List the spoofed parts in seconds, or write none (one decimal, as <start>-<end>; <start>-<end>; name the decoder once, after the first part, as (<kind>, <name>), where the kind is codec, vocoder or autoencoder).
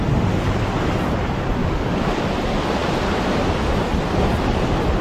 1.6-2.2 (codec, DAC)